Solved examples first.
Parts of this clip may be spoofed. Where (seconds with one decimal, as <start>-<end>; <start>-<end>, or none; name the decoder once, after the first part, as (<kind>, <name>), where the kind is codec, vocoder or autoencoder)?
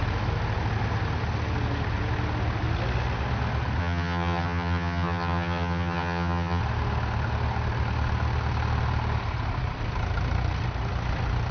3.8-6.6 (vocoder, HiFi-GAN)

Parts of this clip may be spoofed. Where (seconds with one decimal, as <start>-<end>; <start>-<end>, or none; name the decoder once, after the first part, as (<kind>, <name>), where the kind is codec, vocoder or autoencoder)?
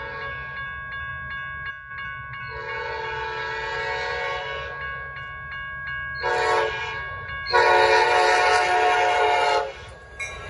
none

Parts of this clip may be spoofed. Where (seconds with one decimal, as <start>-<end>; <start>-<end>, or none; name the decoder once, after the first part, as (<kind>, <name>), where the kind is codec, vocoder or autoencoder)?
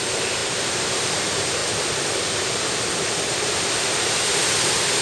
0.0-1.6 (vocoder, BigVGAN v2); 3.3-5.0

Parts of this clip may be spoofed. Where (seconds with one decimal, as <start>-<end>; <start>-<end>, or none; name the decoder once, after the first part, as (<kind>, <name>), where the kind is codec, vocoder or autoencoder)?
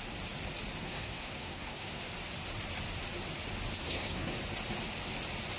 0.8-2.0 (codec, SNAC); 3.8-4.3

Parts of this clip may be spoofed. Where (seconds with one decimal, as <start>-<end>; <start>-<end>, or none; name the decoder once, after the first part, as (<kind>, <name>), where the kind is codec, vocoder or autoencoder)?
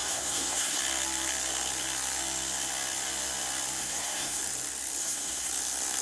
0.0-0.8 (codec, SNAC); 3.8-4.4; 5.0-5.5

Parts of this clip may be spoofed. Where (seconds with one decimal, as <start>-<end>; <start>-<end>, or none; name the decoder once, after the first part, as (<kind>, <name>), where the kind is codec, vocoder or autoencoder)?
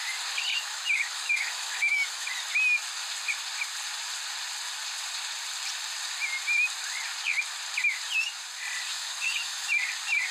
0.5-2.3 (autoencoder, DAC-VAE); 8.9-9.7